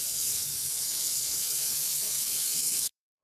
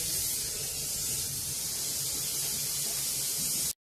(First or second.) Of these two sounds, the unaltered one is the second